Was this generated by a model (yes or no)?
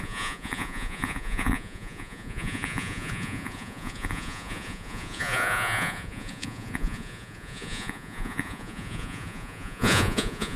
yes